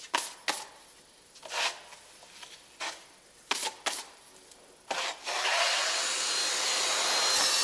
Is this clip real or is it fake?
real